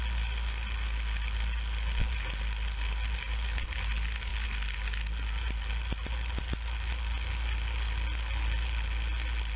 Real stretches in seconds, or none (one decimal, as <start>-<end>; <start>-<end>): 0.0-9.6

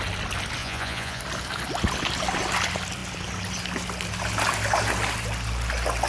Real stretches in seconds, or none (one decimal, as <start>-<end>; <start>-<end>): 0.0-0.6; 1.2-6.1